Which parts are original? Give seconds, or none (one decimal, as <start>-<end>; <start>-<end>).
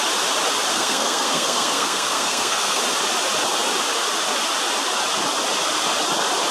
0.0-0.7; 2.8-6.5